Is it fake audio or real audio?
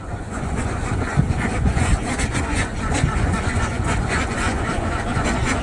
fake